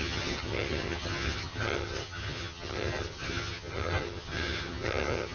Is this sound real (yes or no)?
no